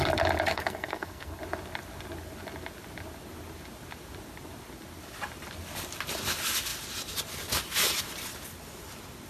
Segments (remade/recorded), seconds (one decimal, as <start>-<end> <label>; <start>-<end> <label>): 0.0-0.5 recorded; 0.5-1.4 remade; 1.4-9.3 recorded